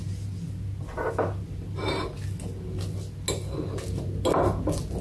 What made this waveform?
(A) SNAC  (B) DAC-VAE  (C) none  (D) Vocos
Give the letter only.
C